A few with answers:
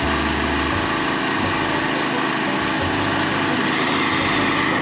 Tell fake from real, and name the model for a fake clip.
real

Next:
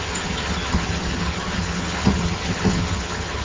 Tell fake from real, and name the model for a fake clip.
fake, vocoder, HiFi-GAN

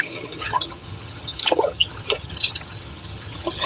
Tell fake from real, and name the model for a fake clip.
fake, vocoder, HiFi-GAN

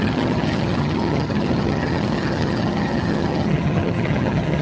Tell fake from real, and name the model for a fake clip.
fake, vocoder, HiFi-GAN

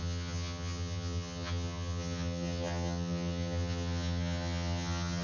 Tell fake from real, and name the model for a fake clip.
fake, vocoder, HiFi-GAN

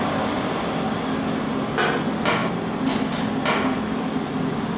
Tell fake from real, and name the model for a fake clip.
real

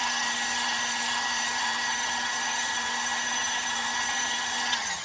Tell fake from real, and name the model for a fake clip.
fake, vocoder, HiFi-GAN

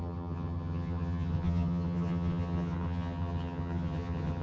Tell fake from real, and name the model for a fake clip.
fake, vocoder, HiFi-GAN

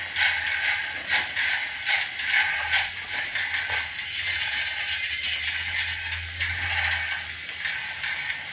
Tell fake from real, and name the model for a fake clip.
real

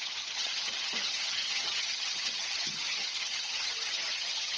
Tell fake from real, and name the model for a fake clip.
fake, vocoder, HiFi-GAN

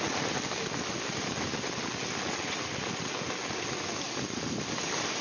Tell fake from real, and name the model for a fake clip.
real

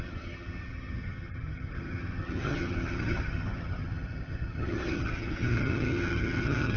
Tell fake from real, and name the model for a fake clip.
fake, vocoder, HiFi-GAN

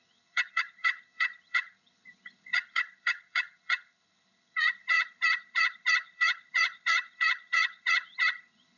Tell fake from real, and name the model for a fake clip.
fake, vocoder, HiFi-GAN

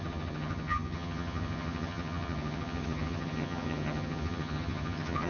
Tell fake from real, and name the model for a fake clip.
fake, vocoder, HiFi-GAN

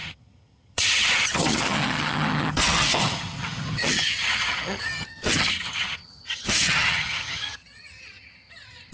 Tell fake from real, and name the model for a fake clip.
fake, vocoder, HiFi-GAN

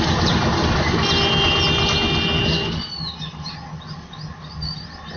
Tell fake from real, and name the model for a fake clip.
real